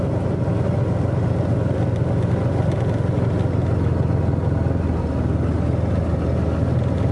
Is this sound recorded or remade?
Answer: recorded